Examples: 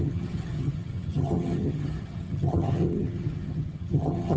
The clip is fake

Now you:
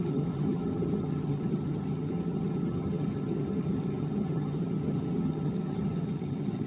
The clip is fake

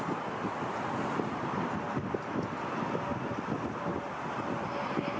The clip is real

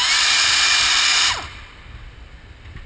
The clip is real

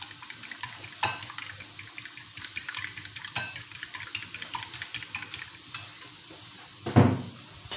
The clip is real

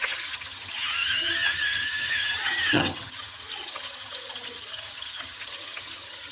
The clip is fake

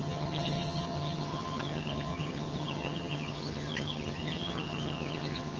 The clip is fake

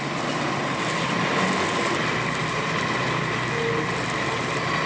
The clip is real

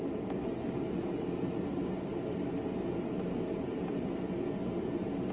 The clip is real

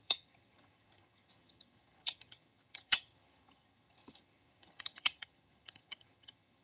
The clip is fake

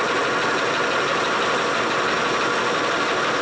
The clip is real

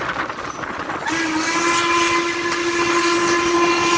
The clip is real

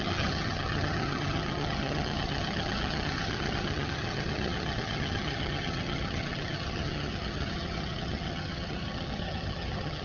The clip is fake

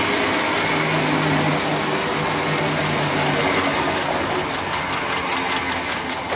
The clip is real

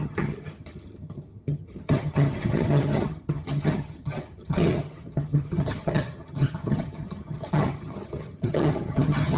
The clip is fake